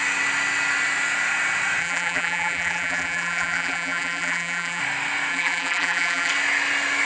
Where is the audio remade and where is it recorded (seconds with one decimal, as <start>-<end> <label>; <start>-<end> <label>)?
0.0-1.8 recorded; 1.8-4.8 remade; 4.8-5.3 recorded; 5.3-6.3 remade; 6.3-7.1 recorded